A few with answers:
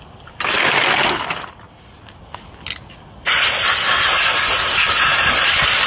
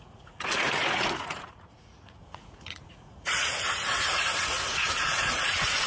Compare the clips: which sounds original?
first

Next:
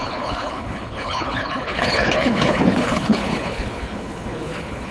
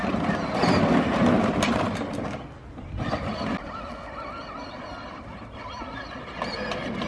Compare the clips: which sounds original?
second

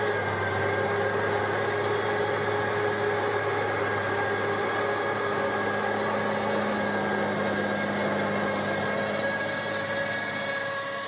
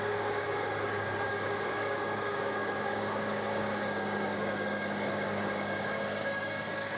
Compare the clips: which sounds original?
first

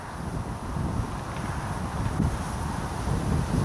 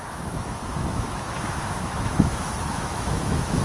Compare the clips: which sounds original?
first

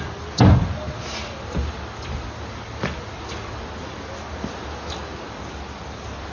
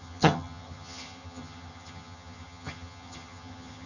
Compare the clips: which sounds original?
first